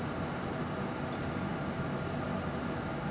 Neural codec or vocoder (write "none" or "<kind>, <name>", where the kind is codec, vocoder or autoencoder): none